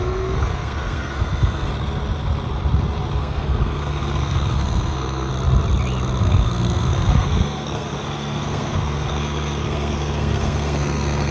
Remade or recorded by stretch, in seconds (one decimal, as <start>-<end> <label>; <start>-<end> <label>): 0.0-1.7 remade; 1.7-3.2 recorded; 3.2-5.3 remade; 5.3-6.2 recorded; 6.2-11.3 remade